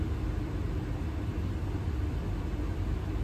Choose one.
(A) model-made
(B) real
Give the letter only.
B